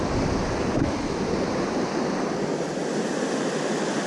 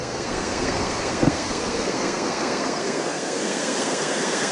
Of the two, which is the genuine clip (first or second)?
first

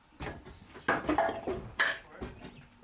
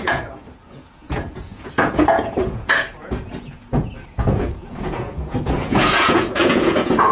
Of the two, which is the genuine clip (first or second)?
first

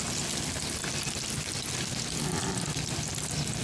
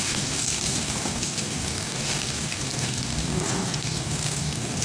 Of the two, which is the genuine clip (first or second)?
first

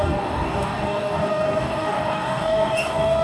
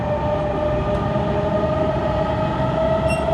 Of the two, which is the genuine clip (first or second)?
second